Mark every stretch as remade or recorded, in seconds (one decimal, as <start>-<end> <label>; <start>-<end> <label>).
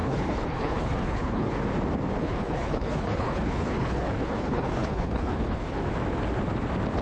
0.0-1.5 remade; 1.5-2.2 recorded; 2.2-5.8 remade; 5.8-7.0 recorded